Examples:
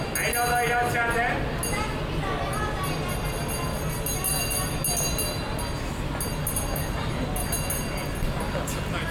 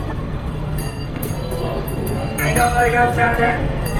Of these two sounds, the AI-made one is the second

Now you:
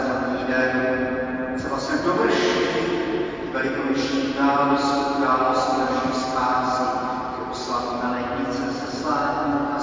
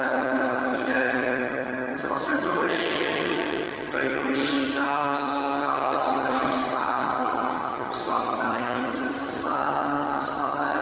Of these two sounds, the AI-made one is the second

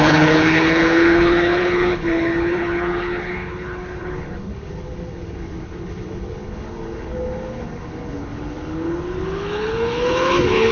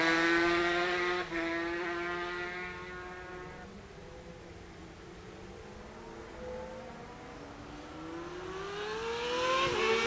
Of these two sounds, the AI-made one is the first